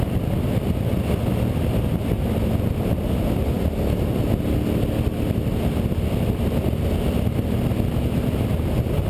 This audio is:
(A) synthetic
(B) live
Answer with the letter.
B